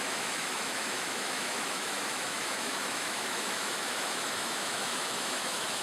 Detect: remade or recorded remade